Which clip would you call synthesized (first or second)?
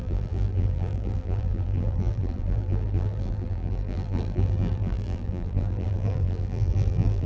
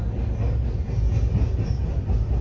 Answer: first